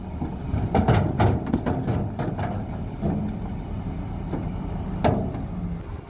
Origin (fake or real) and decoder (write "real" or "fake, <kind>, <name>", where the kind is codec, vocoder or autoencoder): real